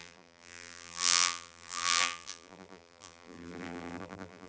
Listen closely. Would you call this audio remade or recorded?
remade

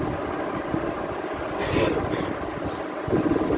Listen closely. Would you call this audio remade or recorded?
recorded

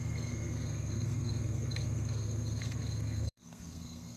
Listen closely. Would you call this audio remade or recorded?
remade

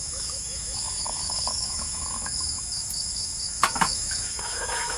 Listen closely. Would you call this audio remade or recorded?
remade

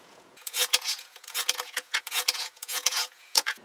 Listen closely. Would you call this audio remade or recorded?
remade